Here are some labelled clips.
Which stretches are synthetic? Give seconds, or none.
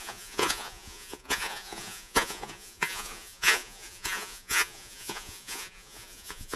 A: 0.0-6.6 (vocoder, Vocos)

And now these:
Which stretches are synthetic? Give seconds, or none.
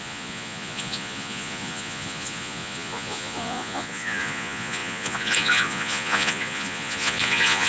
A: 0.0-7.7 (vocoder, Vocos)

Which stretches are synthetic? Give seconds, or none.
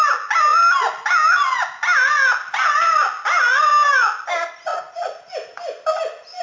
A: 4.7-5.3 (vocoder, Vocos)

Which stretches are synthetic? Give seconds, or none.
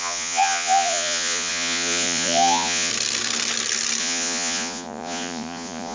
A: 0.0-2.9 (vocoder, Vocos); 4.0-5.9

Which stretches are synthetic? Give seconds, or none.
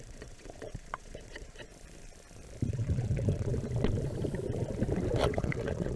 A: 0.0-1.7 (vocoder, Vocos); 2.7-3.5; 5.2-6.0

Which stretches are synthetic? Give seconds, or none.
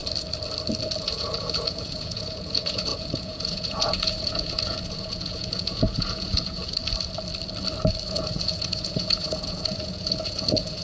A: 1.0-6.8 (vocoder, Vocos); 8.1-10.8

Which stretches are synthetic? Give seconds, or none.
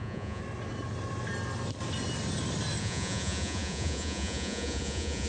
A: 0.0-0.4 (vocoder, Vocos); 2.8-5.3